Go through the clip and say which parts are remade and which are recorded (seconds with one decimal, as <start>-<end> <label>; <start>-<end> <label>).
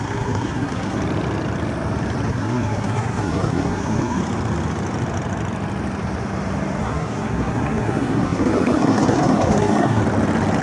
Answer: 0.0-1.0 remade; 1.0-2.3 recorded; 2.3-4.2 remade; 4.2-6.8 recorded; 6.8-10.0 remade; 10.0-10.6 recorded